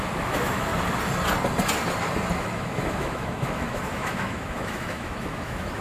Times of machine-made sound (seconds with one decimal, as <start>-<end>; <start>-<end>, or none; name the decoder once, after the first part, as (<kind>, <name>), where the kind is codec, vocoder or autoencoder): 0.0-0.7 (autoencoder, DAC-VAE); 2.4-5.8